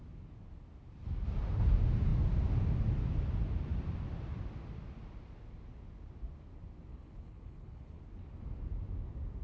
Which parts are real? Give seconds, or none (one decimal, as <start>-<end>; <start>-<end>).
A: 0.0-6.9; 8.0-9.4